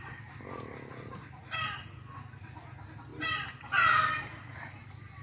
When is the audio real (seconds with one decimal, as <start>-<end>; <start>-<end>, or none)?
0.0-5.2